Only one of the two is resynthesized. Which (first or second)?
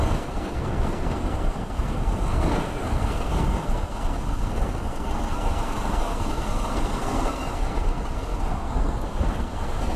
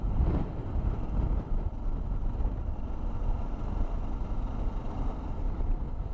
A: first